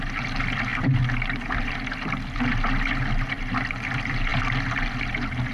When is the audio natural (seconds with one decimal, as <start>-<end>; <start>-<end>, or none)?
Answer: 0.0-5.5